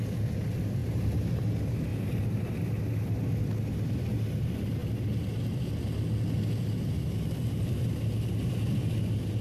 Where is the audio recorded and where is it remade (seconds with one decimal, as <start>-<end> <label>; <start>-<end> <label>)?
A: 0.0-1.9 recorded; 1.9-2.4 remade; 2.4-9.4 recorded